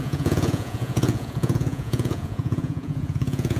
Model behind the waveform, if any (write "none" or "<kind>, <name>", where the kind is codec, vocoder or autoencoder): vocoder, Vocos